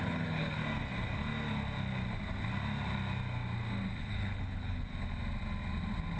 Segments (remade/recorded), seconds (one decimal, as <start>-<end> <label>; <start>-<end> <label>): 0.0-0.6 remade; 0.6-4.0 recorded; 4.0-4.9 remade; 4.9-6.2 recorded